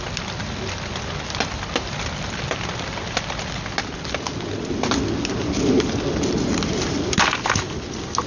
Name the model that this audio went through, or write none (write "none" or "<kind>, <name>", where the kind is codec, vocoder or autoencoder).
none